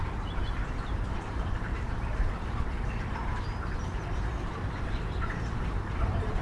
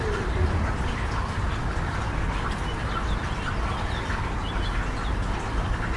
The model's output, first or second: first